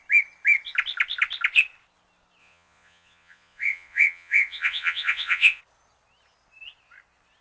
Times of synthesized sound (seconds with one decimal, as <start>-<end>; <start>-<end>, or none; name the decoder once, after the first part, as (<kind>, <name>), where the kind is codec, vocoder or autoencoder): 2.4-5.6 (vocoder, Vocos)